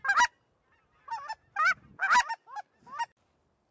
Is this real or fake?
real